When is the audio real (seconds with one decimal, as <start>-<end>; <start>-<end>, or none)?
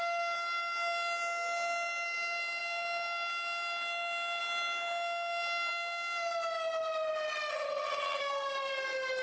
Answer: 0.0-7.5; 8.2-9.2